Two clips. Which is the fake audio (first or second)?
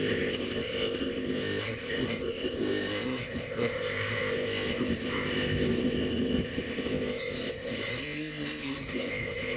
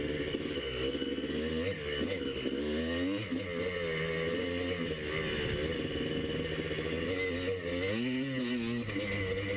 first